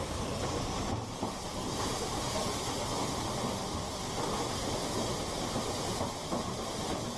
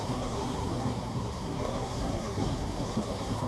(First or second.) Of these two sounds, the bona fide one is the first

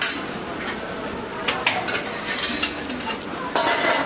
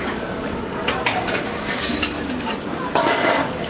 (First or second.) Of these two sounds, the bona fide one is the first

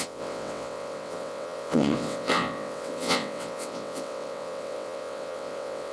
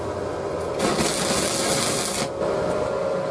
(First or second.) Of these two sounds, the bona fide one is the second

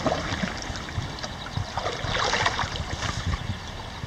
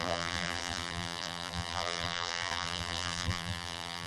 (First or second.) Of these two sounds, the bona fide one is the first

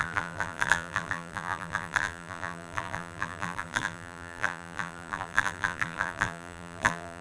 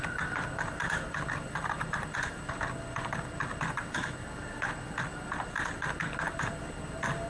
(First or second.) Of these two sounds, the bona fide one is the second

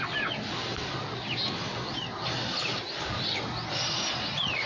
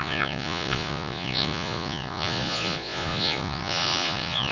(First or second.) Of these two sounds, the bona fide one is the first